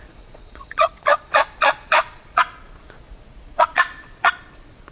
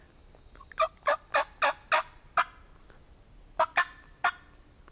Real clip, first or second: second